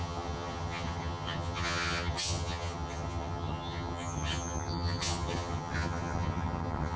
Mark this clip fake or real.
fake